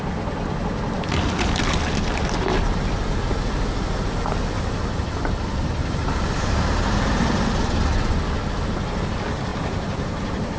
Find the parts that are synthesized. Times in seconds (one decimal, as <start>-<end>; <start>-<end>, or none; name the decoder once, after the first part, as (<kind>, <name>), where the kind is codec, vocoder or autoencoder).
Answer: 5.8-8.2 (vocoder, BigVGAN v2); 9.5-10.6